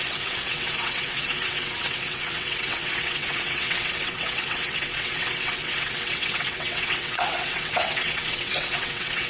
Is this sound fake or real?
fake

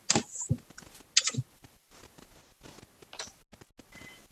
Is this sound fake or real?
real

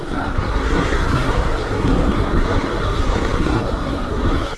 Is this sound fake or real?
fake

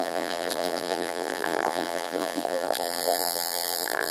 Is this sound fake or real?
fake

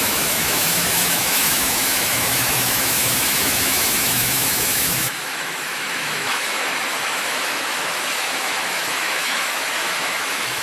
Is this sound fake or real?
fake